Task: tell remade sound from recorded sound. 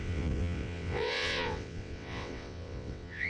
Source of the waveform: remade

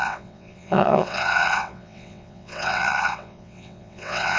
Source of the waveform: remade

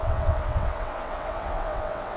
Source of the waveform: remade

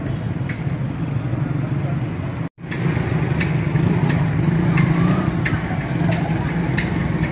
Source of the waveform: recorded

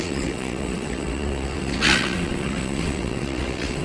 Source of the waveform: remade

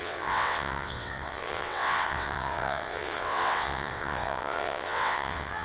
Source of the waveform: remade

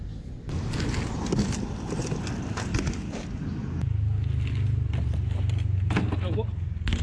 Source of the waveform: recorded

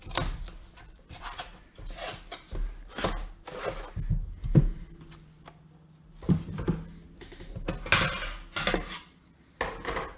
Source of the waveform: recorded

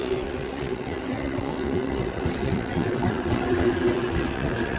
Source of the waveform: remade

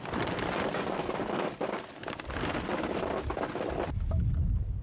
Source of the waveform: recorded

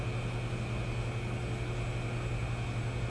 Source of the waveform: recorded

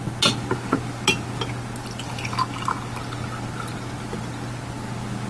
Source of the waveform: recorded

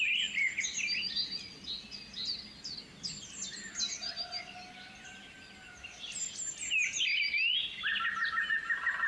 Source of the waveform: recorded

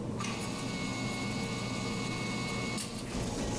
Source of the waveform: recorded